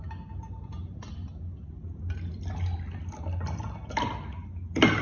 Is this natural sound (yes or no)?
yes